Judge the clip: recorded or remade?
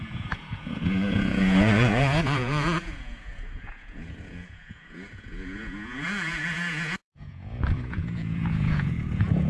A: remade